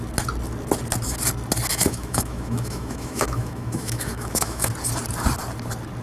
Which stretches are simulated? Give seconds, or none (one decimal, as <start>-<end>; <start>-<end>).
1.7-4.7